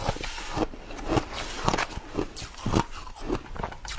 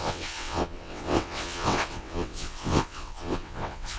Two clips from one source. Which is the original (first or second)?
first